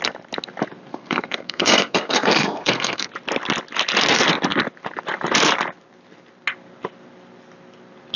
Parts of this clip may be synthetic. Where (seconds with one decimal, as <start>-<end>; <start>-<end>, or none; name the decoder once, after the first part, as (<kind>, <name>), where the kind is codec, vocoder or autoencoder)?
0.9-3.1 (codec, SNAC)